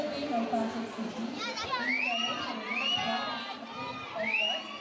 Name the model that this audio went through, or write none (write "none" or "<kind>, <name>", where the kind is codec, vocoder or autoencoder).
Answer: none